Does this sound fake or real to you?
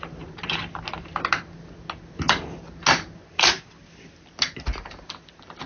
real